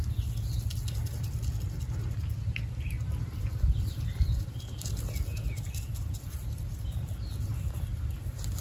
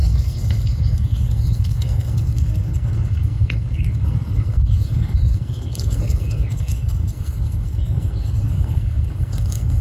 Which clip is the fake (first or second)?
second